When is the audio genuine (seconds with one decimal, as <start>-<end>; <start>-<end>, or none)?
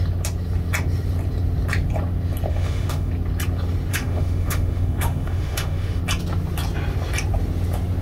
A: 0.0-2.5; 3.1-3.9; 6.0-8.0